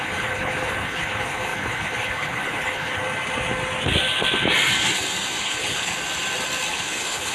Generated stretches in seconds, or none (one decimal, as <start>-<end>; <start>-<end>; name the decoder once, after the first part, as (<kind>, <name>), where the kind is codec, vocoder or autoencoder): 0.0-3.0 (codec, HILCodec); 5.4-5.9; 6.7-7.3